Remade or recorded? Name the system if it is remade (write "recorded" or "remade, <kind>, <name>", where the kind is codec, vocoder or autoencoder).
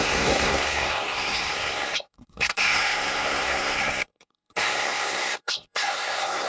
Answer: remade, codec, SNAC